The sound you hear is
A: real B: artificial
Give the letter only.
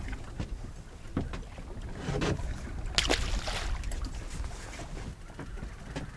A